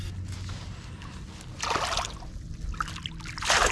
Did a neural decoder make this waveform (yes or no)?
no